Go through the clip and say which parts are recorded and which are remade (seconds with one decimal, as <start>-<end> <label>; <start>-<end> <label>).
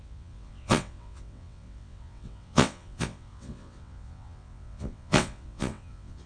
0.0-6.3 remade